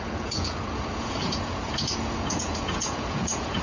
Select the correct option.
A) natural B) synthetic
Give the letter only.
B